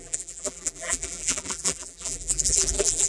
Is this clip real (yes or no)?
no